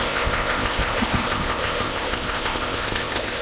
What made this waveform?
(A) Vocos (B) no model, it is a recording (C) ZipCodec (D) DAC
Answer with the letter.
C